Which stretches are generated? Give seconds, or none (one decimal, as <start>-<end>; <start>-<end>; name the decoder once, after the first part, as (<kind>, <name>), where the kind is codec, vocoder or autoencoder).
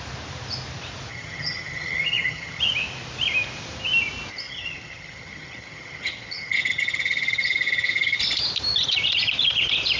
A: 1.1-2.6 (vocoder, HiFi-GAN); 4.3-8.2